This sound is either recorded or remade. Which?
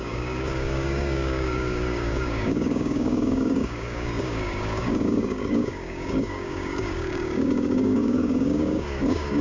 remade